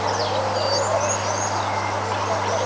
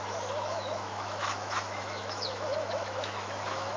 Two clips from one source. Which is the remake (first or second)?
second